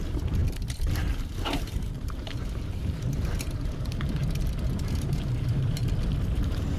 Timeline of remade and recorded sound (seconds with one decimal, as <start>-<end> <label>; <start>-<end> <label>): 0.0-4.2 remade; 4.2-4.7 recorded; 4.7-5.8 remade; 5.8-6.3 recorded; 6.3-6.8 remade